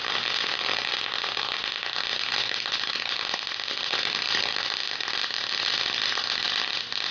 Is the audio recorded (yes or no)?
yes